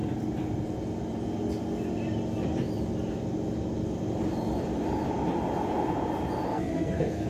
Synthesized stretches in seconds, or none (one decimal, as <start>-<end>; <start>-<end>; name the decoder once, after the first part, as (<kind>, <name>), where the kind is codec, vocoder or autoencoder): 6.5-7.3 (codec, SNAC)